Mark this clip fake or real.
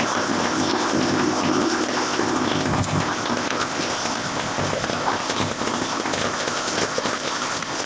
fake